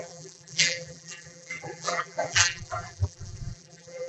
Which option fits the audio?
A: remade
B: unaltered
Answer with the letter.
A